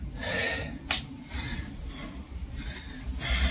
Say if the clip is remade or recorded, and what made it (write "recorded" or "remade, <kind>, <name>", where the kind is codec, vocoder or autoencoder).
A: remade, vocoder, BigVGAN v2